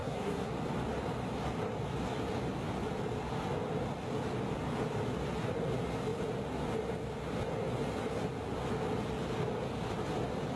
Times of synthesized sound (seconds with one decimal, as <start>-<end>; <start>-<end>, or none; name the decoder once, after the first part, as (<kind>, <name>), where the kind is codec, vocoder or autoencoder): 0.0-0.5 (codec, SNAC)